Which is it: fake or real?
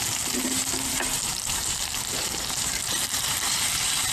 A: fake